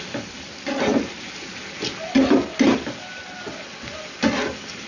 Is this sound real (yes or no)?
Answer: yes